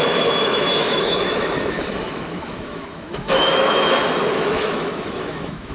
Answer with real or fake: fake